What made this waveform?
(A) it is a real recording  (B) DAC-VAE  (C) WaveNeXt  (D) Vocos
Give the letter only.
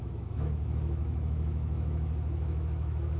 B